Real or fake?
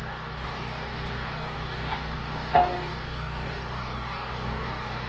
fake